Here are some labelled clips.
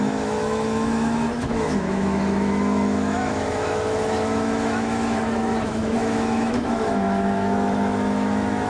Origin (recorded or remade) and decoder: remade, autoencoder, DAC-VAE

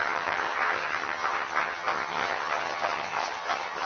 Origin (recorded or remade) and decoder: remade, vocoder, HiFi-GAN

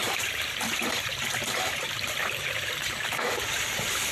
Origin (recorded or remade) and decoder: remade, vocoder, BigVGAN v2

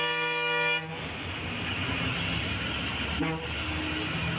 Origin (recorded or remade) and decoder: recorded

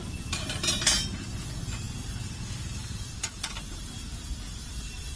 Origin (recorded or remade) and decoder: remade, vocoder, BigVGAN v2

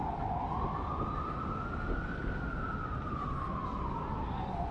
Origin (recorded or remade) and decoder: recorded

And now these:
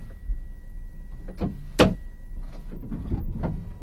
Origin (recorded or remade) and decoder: recorded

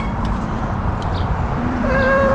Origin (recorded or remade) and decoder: remade, vocoder, BigVGAN v2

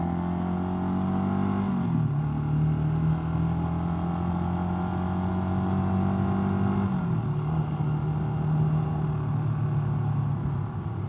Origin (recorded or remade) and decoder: recorded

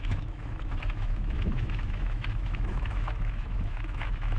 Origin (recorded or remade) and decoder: remade, autoencoder, DAC-VAE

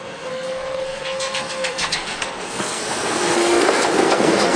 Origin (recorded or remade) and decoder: remade, codec, SNAC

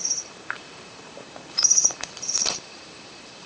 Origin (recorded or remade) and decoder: remade, vocoder, BigVGAN v2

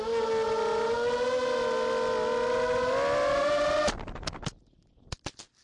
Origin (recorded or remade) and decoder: recorded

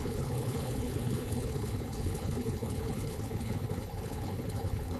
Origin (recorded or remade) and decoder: remade, codec, HILCodec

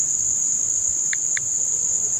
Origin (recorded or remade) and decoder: recorded